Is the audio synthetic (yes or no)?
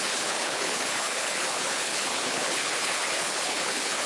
yes